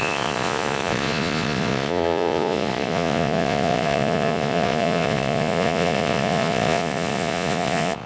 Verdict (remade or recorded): remade